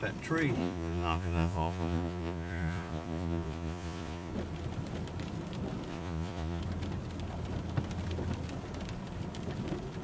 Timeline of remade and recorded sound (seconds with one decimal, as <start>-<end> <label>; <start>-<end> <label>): 0.0-0.6 recorded; 0.6-4.3 remade; 4.3-5.9 recorded; 5.9-6.6 remade; 6.6-10.0 recorded